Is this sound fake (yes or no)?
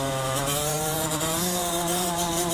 yes